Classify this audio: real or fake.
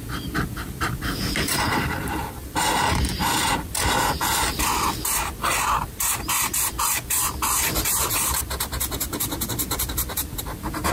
fake